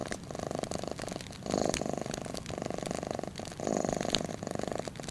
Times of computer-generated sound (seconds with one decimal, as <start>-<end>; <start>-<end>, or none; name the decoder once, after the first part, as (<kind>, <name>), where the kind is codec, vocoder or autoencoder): none